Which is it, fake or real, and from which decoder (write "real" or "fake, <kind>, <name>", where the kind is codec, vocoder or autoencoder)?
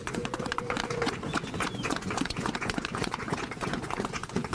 fake, vocoder, Vocos